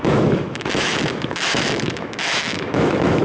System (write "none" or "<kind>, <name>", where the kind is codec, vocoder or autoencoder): autoencoder, DAC-VAE